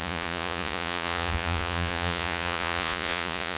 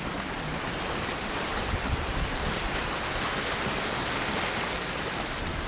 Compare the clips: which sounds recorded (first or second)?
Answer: second